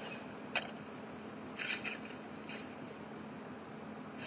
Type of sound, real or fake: real